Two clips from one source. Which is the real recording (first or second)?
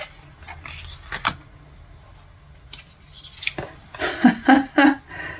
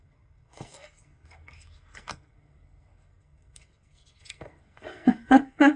first